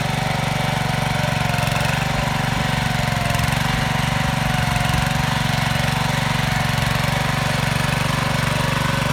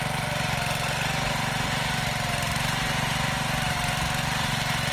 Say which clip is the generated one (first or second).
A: second